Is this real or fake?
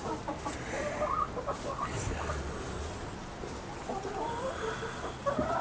real